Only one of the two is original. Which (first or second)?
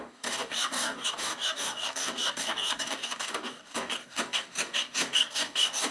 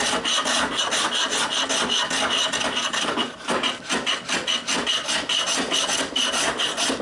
second